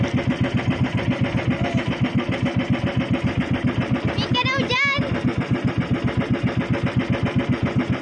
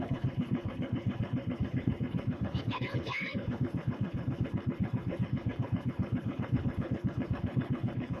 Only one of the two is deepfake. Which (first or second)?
second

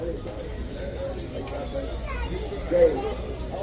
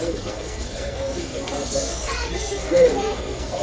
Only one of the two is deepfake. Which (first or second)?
second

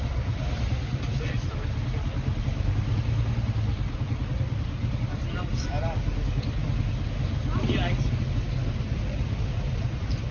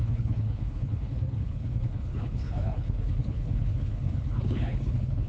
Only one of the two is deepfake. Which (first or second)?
second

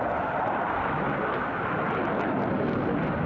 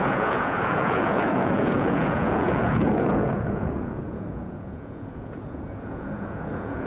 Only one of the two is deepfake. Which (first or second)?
second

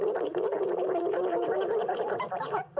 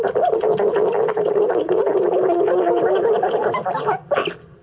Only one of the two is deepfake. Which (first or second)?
first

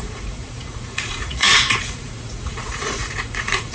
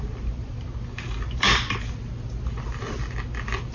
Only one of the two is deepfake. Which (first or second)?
first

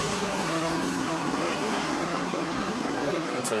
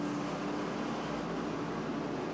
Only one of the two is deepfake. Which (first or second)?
first